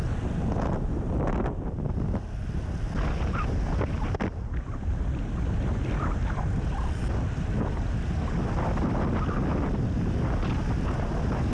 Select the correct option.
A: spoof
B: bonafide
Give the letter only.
B